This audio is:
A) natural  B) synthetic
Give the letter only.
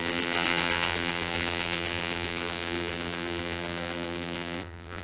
B